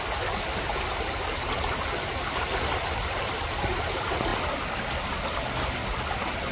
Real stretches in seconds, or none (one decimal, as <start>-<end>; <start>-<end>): 0.0-6.5